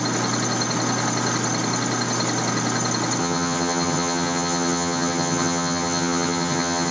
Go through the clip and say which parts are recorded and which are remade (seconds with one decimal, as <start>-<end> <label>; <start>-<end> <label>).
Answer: 0.0-3.2 recorded; 3.2-6.9 remade